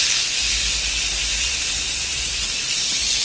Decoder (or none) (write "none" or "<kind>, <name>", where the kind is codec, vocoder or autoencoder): none